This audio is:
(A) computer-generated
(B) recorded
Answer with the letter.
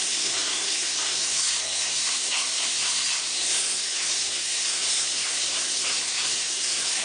A